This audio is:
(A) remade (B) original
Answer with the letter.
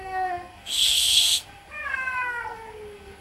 A